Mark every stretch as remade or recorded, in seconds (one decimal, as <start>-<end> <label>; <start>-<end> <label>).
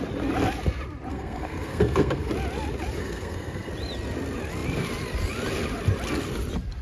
0.0-1.1 recorded; 1.1-2.3 remade; 2.3-3.0 recorded; 3.0-3.7 remade; 3.7-6.8 recorded